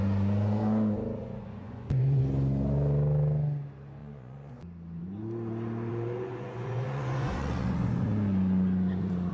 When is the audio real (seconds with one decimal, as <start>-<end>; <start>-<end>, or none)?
0.0-1.2; 2.2-4.0; 4.5-5.9